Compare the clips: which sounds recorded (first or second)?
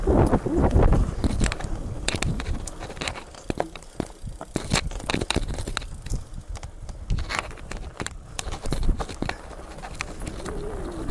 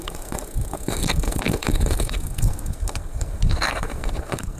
first